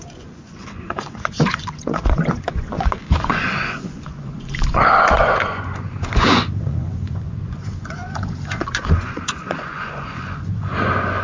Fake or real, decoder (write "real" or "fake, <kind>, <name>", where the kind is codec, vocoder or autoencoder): fake, vocoder, Vocos